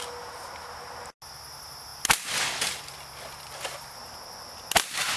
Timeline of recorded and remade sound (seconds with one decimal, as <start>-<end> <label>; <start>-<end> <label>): 0.0-5.2 recorded